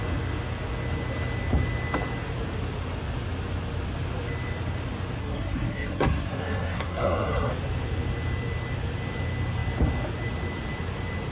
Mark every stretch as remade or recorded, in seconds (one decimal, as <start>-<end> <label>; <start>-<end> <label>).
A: 0.0-5.2 recorded; 5.2-7.5 remade; 7.5-11.3 recorded